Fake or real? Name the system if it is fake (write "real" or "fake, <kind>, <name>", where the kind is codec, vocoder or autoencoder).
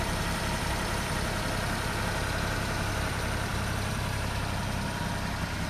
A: fake, vocoder, BigVGAN v2